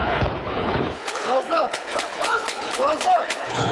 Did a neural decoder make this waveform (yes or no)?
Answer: yes